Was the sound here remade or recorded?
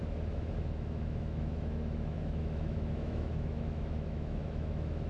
remade